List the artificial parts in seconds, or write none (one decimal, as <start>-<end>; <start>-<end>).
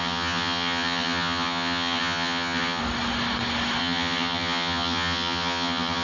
0.0-2.8; 3.8-6.0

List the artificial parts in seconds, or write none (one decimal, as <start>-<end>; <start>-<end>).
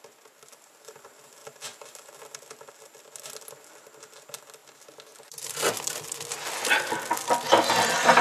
none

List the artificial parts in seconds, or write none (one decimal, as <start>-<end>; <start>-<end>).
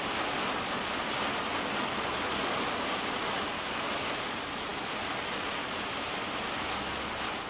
none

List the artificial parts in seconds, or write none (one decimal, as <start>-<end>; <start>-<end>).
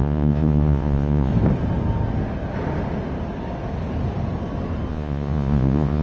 0.0-1.3; 4.9-6.0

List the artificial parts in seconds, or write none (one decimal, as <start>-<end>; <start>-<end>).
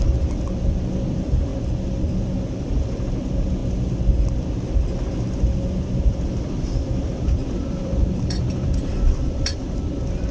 0.0-1.5; 2.7-3.6; 6.0-10.3